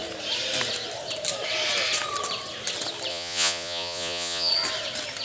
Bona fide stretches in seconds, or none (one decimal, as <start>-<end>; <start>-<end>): 0.0-3.1; 4.5-5.2